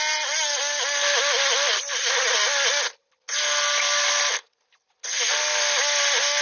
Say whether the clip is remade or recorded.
recorded